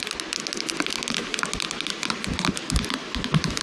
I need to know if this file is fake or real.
real